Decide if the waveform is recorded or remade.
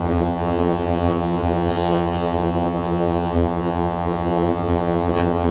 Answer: remade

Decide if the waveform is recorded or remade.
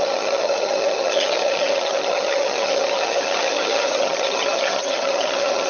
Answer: remade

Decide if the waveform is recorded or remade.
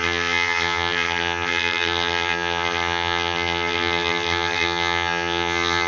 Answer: remade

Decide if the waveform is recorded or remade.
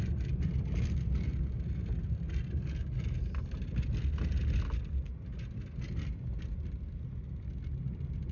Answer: recorded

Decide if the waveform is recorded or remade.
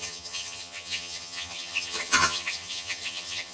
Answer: remade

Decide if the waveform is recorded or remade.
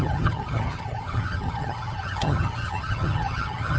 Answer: remade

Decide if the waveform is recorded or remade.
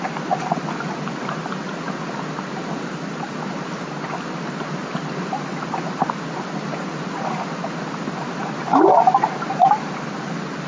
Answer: recorded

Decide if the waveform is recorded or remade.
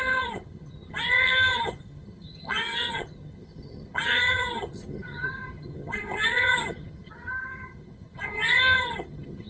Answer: remade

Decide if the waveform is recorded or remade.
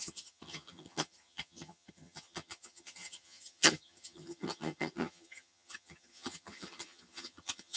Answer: remade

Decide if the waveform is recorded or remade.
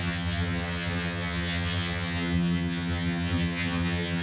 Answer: remade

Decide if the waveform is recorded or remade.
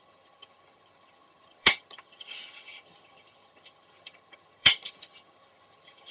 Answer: remade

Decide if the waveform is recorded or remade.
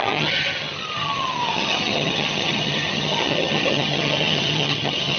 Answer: remade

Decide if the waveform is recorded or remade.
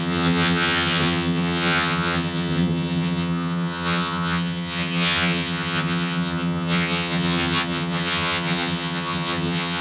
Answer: remade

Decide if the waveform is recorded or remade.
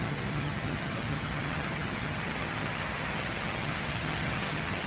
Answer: remade